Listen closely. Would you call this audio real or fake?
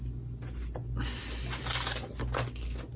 real